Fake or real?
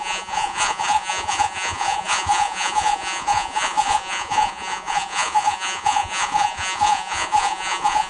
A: fake